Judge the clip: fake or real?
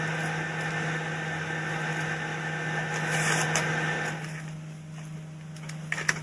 real